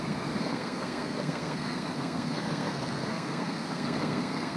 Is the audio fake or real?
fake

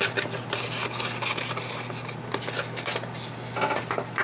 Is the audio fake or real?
real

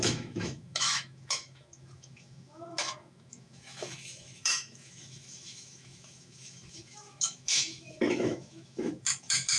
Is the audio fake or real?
fake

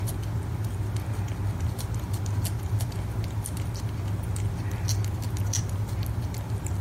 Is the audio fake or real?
real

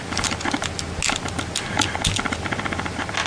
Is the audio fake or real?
real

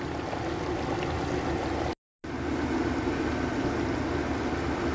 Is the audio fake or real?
real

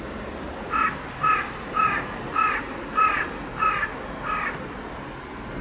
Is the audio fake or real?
real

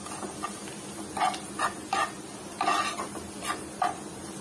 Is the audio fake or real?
real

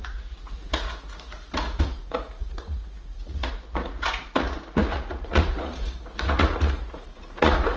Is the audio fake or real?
fake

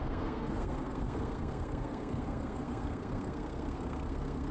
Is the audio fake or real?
fake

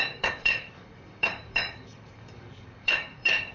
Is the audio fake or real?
fake